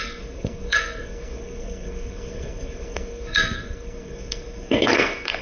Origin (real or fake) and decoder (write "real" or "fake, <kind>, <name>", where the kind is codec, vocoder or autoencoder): fake, codec, SNAC